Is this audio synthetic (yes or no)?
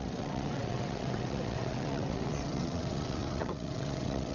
yes